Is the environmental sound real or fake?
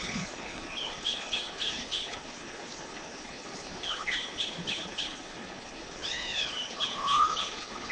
fake